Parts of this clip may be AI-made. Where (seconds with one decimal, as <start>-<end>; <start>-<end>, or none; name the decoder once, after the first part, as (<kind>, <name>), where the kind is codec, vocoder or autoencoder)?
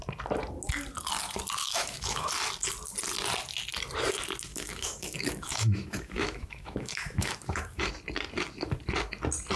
1.6-2.3 (autoencoder, DAC-VAE); 4.5-7.9